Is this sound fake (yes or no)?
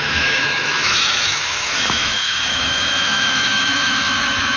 yes